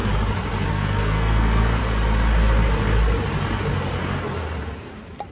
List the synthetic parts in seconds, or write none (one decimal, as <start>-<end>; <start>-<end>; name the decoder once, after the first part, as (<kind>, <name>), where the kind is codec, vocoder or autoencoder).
0.7-1.8 (codec, SNAC)